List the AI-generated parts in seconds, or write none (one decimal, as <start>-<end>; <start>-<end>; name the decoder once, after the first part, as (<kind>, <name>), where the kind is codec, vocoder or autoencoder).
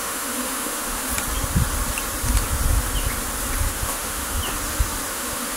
0.0-1.1 (autoencoder, DAC-VAE); 3.7-4.4; 5.1-5.6